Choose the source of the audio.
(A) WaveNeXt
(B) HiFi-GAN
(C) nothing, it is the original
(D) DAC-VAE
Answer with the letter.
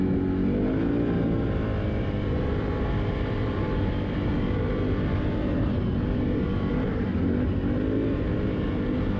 C